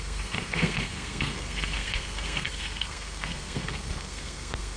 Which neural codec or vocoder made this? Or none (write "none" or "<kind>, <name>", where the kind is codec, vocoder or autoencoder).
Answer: codec, SNAC